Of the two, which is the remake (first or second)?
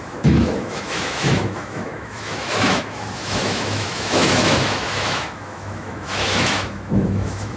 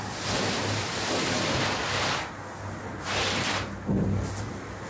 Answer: first